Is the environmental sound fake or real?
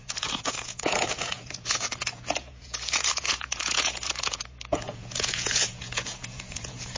fake